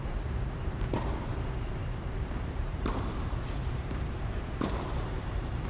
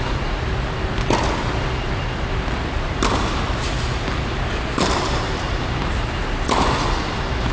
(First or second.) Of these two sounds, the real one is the second